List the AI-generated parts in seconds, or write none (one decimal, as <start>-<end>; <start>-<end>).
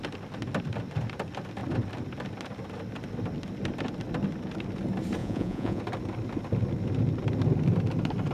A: 5.2-5.8